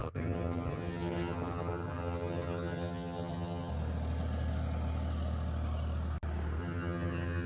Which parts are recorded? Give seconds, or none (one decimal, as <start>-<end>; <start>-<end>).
3.7-6.6